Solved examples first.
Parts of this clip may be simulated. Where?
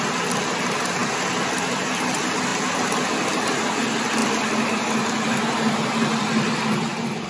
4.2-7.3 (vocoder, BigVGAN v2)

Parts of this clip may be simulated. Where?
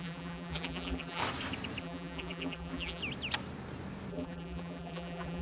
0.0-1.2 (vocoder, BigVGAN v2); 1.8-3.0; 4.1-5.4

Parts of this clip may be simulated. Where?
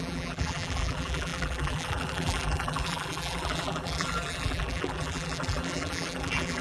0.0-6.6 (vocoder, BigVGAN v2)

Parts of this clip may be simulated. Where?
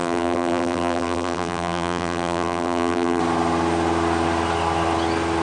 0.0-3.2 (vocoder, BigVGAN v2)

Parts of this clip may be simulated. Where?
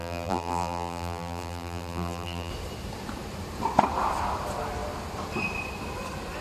0.0-2.5 (vocoder, BigVGAN v2)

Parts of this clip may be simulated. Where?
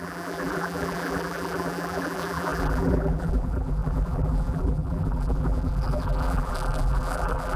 0.0-7.6 (vocoder, BigVGAN v2)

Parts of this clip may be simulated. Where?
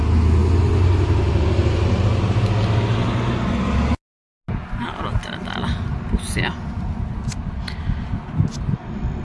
none